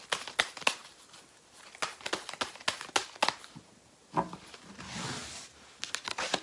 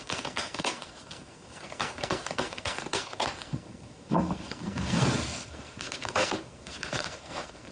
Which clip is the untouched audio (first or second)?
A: first